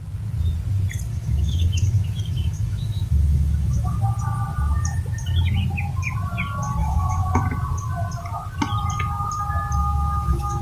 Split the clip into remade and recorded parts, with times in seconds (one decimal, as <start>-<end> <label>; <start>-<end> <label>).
0.0-1.1 recorded; 1.1-4.0 remade; 4.0-6.8 recorded; 6.8-7.4 remade; 7.4-9.8 recorded; 9.8-10.6 remade